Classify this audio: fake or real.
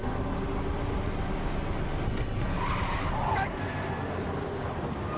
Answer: real